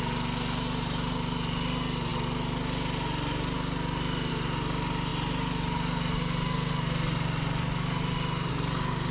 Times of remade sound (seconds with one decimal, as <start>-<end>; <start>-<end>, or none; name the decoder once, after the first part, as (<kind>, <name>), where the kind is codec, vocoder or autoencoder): none